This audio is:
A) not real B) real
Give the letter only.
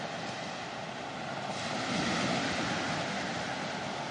B